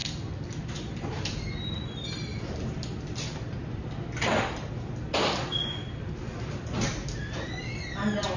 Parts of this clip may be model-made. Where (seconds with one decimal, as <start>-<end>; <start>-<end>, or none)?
none